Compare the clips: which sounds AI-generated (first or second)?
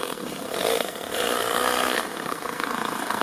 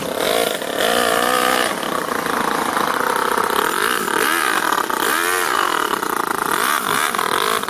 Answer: first